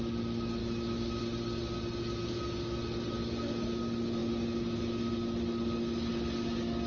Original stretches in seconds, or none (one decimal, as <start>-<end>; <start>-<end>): 0.0-0.6; 1.2-6.9